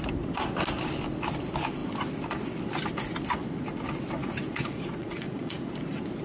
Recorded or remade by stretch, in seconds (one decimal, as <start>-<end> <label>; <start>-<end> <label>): 0.0-4.2 recorded; 4.2-5.7 remade; 5.7-6.2 recorded